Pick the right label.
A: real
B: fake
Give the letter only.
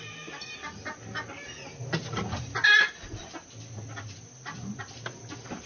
A